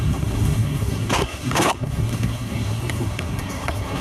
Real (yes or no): no